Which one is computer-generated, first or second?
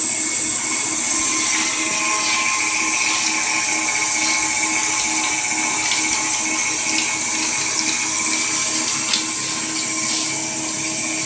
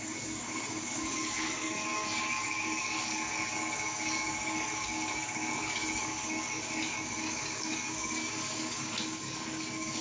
second